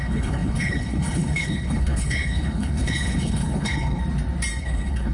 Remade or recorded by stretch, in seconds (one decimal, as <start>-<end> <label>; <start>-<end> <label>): 0.0-4.0 remade; 4.0-4.6 recorded; 4.6-5.1 remade